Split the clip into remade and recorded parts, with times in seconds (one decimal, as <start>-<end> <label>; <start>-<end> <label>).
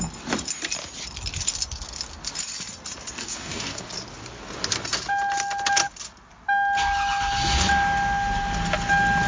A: 0.0-3.2 recorded; 3.2-3.8 remade; 3.8-9.3 recorded